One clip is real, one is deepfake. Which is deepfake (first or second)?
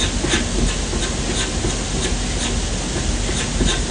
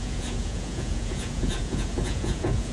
second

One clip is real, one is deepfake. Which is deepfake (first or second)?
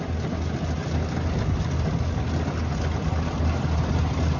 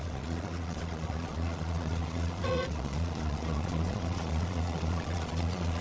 second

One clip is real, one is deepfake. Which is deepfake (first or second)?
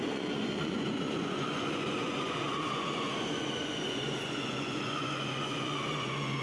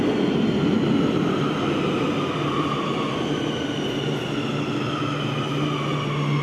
first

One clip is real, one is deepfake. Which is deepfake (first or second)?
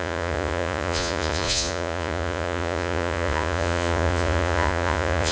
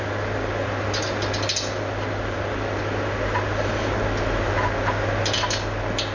first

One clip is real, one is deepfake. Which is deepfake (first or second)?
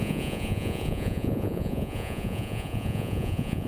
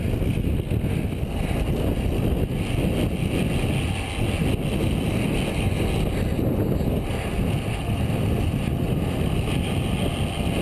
first